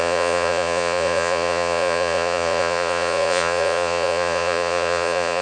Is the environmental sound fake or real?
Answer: fake